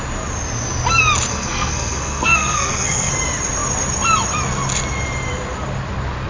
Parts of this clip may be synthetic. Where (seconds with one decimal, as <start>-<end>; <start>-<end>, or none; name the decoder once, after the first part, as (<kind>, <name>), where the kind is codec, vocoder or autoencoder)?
1.3-3.1 (codec, SNAC)

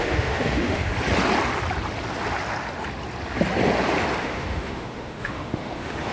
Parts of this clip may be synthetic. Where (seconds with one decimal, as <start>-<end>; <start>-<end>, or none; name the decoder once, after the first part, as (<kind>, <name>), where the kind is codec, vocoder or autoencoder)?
0.0-0.9 (autoencoder, DAC-VAE); 4.2-6.1

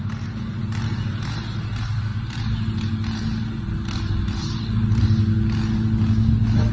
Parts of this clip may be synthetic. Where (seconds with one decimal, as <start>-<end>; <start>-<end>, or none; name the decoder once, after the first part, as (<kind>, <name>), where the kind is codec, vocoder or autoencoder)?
none

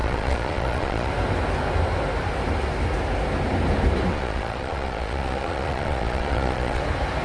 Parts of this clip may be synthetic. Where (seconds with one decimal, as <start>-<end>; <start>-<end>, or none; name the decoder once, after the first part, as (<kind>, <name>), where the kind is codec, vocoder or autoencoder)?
0.0-1.1 (vocoder, Vocos); 4.1-6.8

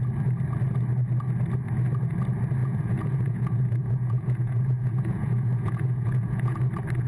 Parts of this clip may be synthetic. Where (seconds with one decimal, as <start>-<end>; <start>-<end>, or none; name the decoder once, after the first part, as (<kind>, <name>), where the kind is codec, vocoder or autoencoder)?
2.6-6.6 (vocoder, Vocos)

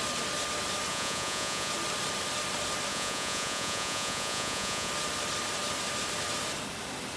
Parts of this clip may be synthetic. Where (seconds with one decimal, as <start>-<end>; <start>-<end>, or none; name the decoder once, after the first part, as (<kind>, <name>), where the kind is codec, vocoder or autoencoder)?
0.9-1.7 (vocoder, Vocos); 2.9-4.9

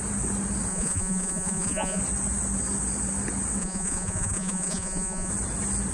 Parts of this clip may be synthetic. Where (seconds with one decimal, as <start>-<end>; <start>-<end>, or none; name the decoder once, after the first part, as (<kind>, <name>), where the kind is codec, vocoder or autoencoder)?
0.7-2.0 (vocoder, Vocos); 3.6-5.3